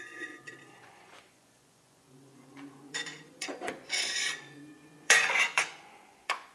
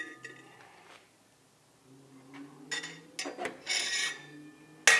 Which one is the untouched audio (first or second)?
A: second